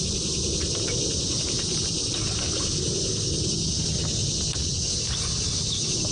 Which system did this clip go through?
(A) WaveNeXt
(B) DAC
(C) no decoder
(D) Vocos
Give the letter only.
C